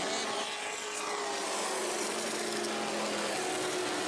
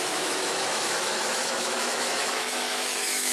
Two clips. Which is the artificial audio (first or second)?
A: second